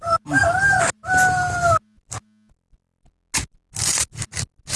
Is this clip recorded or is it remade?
recorded